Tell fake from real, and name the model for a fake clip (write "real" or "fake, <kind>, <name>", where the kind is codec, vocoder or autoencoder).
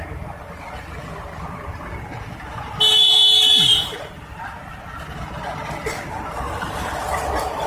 real